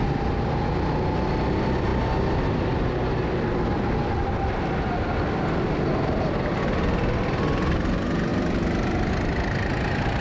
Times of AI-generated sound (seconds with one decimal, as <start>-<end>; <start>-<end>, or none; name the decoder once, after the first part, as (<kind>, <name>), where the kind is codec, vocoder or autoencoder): none